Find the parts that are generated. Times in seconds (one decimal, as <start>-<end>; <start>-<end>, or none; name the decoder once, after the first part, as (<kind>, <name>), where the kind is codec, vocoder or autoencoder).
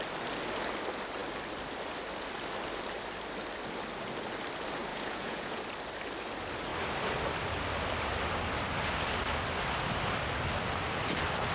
4.9-5.6 (vocoder, Vocos)